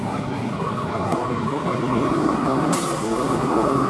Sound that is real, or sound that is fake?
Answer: fake